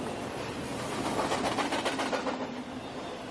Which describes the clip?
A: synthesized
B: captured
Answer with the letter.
B